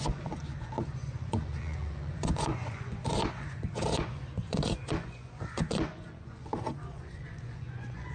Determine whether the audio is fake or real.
fake